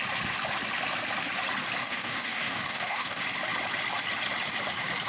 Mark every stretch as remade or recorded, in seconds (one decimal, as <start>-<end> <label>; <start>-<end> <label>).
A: 0.0-1.8 recorded; 1.8-3.2 remade; 3.2-5.1 recorded